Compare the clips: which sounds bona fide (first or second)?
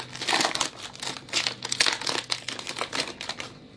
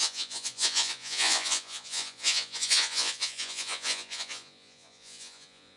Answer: first